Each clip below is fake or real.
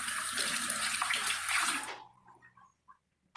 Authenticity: fake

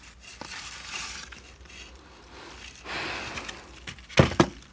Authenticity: real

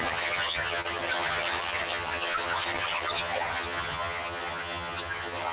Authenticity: fake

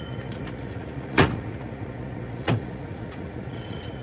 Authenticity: fake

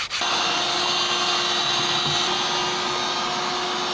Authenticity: real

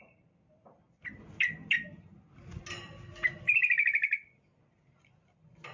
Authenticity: real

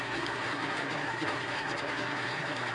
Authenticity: fake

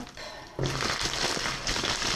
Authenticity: real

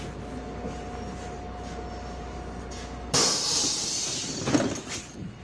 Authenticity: real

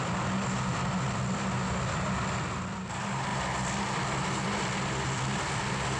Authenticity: real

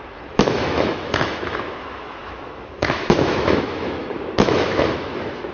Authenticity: fake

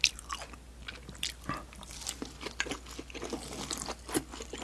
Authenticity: real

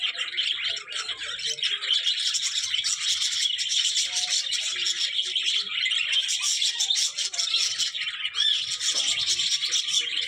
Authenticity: real